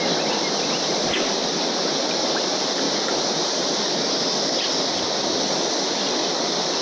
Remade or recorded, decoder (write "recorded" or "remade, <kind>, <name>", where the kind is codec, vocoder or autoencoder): recorded